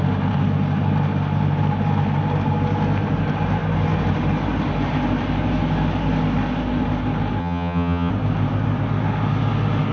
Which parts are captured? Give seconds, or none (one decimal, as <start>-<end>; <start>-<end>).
0.0-7.4; 8.1-9.9